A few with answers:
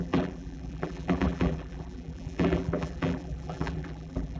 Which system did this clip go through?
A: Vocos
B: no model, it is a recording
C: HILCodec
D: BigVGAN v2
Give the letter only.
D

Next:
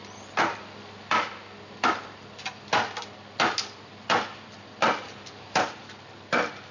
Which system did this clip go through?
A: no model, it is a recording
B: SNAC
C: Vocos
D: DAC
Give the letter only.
A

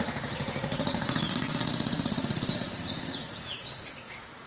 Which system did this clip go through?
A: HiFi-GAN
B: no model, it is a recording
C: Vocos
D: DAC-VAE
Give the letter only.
C